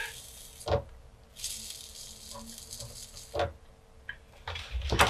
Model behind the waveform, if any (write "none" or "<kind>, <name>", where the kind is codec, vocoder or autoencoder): none